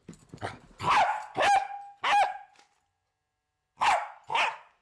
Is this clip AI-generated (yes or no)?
no